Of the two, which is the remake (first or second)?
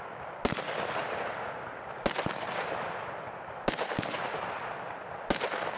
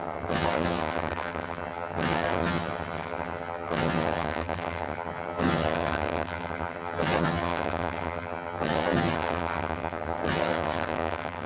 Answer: second